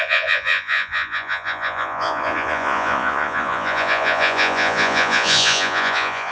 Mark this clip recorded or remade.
remade